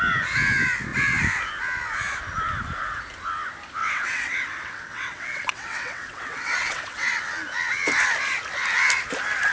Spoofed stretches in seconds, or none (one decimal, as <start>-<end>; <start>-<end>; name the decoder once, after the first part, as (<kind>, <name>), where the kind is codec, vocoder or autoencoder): 3.8-7.1 (vocoder, WaveNeXt)

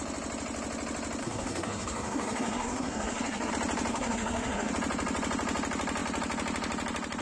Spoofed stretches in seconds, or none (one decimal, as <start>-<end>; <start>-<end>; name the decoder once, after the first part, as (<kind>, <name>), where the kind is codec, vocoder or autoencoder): 1.2-3.5 (codec, SNAC); 3.9-4.7

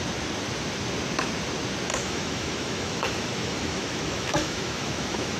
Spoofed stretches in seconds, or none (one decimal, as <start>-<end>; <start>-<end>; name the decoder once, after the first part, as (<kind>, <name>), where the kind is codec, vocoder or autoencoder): 1.9-5.4 (autoencoder, DAC-VAE)

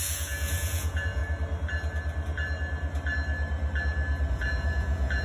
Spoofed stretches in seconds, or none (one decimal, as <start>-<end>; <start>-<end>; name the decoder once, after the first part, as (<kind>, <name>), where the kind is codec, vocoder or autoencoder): 0.0-1.2 (vocoder, Vocos); 4.3-5.2

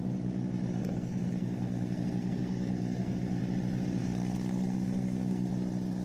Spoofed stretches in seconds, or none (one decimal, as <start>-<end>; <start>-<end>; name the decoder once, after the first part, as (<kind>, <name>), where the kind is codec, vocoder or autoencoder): 0.8-3.4 (codec, SNAC); 4.0-5.5

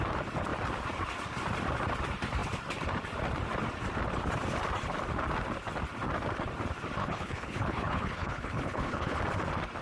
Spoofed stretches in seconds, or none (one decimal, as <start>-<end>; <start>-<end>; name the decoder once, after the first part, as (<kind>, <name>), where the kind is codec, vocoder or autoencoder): 7.0-9.2 (codec, HILCodec)

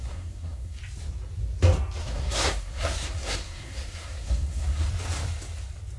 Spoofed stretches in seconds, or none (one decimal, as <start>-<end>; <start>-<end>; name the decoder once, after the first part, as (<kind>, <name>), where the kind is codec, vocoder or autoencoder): 0.0-0.8 (codec, SNAC); 2.0-4.9